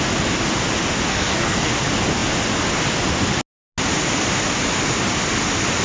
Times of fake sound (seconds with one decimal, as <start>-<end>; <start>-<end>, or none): 1.1-1.7